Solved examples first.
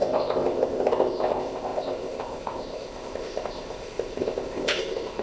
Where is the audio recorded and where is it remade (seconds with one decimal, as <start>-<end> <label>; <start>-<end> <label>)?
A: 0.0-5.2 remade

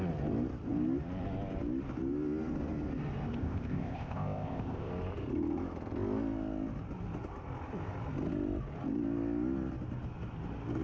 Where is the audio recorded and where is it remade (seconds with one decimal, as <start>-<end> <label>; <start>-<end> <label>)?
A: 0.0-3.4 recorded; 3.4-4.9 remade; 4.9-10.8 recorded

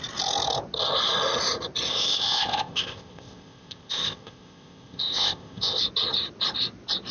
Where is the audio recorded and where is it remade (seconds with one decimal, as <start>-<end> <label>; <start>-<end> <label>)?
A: 0.0-1.9 recorded; 1.9-5.8 remade; 5.8-7.1 recorded

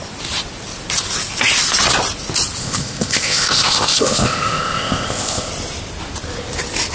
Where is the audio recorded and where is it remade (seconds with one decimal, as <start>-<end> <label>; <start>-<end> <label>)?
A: 0.0-2.6 recorded; 2.6-5.5 remade; 5.5-6.9 recorded

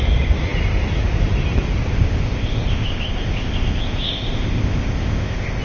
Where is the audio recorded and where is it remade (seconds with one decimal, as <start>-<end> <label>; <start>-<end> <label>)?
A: 0.0-1.9 recorded; 1.9-5.6 remade

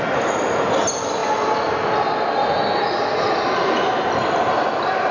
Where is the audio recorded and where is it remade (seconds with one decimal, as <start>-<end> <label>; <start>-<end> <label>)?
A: 0.0-5.1 recorded

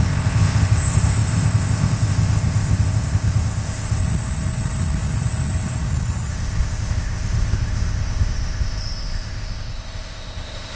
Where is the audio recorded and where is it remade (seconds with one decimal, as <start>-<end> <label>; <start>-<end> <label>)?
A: 0.0-4.0 remade; 4.0-6.3 recorded; 6.3-10.8 remade